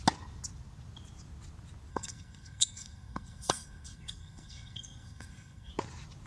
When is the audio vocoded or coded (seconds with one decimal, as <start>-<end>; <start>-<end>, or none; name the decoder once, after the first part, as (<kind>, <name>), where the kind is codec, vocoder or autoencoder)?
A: 1.9-5.7 (codec, SNAC)